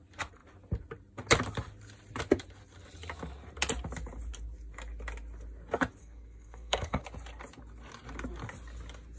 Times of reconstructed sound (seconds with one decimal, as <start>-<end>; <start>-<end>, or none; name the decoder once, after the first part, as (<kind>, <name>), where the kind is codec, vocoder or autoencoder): 6.0-7.0 (codec, SNAC)